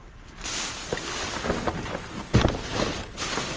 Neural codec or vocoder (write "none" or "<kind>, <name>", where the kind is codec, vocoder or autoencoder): none